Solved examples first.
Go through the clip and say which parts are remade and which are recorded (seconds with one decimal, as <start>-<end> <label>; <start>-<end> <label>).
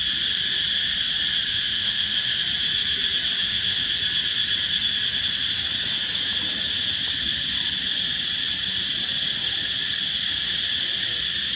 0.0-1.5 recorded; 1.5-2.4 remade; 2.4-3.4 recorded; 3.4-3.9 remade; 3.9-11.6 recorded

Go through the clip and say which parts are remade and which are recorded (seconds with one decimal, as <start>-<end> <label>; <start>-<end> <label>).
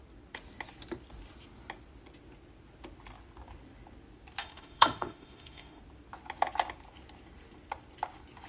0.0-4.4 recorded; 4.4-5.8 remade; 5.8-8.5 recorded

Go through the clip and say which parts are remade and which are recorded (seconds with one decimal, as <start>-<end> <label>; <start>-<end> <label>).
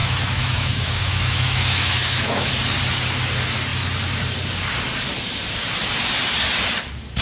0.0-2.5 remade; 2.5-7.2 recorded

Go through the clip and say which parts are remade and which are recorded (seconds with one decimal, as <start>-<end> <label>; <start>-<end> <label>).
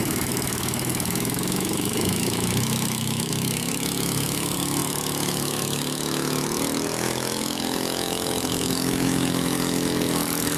0.0-10.6 remade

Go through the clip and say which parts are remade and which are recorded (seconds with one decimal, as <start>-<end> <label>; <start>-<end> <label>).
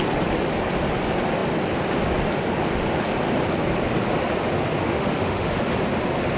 0.0-4.8 recorded; 4.8-5.6 remade; 5.6-6.4 recorded